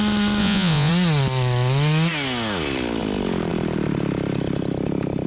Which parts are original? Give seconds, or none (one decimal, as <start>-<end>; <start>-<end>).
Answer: 0.0-0.4; 0.9-5.3